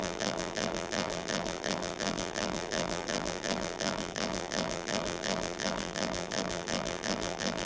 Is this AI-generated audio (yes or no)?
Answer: yes